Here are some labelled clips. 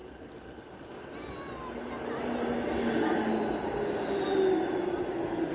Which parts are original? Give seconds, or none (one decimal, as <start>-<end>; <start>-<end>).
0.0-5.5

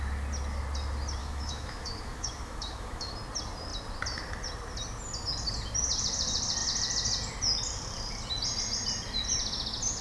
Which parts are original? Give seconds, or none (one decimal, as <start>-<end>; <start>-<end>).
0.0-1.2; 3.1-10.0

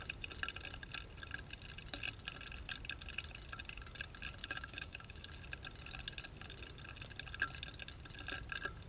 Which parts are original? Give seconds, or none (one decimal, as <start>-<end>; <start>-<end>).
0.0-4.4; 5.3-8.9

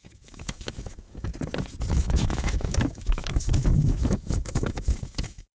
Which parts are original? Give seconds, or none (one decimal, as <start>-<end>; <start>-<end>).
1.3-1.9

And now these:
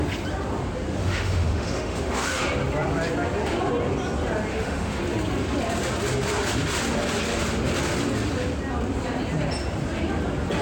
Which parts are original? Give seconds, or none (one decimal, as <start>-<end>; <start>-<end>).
0.0-1.0; 2.4-4.5; 5.0-10.6

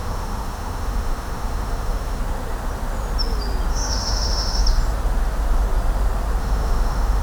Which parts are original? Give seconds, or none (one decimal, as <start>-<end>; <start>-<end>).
2.2-3.7; 4.6-6.4

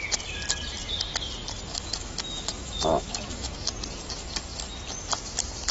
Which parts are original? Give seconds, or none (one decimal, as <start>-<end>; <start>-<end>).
0.0-1.7; 3.7-5.7